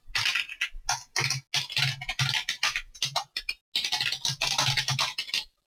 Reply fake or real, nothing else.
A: real